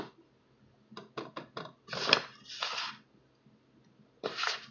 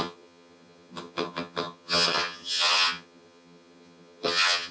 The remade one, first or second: second